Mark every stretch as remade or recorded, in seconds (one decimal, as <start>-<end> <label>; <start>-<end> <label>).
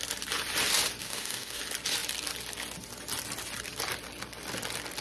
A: 0.0-1.0 recorded; 1.0-1.6 remade; 1.6-5.0 recorded